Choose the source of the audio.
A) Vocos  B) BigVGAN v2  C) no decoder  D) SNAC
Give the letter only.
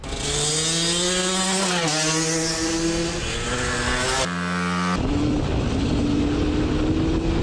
C